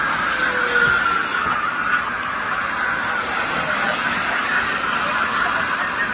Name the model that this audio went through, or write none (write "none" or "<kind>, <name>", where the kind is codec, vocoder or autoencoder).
none